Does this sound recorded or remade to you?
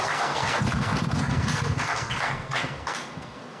remade